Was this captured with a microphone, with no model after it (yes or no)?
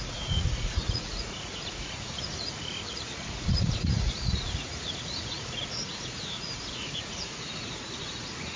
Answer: no